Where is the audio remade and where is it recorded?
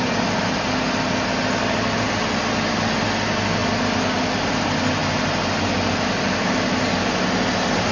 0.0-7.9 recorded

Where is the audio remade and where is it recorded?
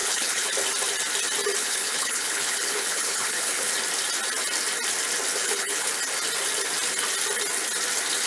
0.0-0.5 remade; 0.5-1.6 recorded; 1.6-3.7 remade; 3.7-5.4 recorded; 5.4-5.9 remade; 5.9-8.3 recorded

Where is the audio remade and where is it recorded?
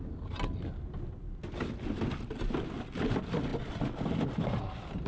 0.0-5.1 recorded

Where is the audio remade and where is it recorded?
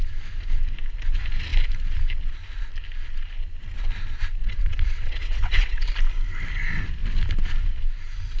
0.0-4.4 recorded; 4.4-5.9 remade; 5.9-8.4 recorded